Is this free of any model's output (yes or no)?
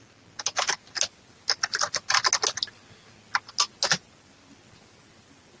yes